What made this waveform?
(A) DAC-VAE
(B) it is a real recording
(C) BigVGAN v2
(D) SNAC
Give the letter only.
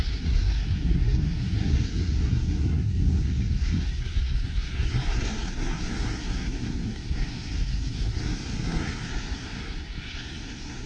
D